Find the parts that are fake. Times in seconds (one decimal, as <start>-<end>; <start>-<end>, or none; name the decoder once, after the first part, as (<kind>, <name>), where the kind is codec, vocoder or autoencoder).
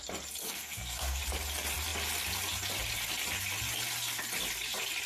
0.4-1.2 (codec, SNAC)